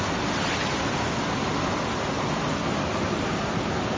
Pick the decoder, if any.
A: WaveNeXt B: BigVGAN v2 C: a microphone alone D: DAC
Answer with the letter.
C